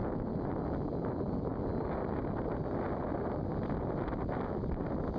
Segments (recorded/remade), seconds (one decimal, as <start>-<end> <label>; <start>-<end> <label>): 0.0-5.2 recorded